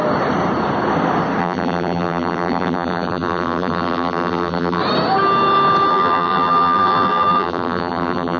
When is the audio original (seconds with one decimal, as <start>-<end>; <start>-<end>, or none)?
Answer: 0.0-1.4; 4.8-5.9